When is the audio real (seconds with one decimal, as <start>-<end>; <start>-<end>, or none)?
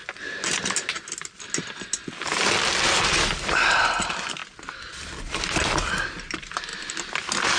0.0-7.6